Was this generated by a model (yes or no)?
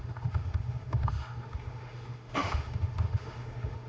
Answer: yes